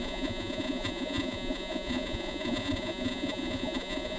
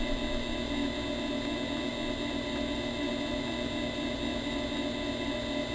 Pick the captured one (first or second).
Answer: second